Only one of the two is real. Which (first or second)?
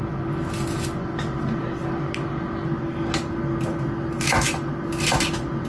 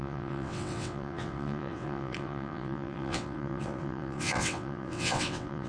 first